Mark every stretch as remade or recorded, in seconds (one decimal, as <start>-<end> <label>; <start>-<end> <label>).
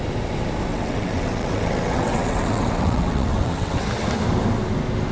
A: 0.0-0.7 recorded; 0.7-3.8 remade; 3.8-5.1 recorded